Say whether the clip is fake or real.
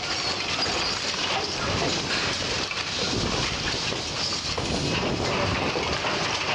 real